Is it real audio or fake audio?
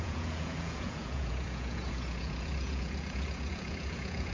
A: fake